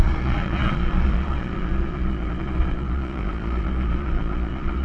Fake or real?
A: fake